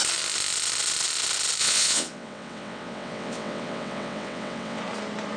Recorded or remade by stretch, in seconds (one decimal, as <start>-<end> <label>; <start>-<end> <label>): 0.0-1.6 recorded; 1.6-4.8 remade; 4.8-5.4 recorded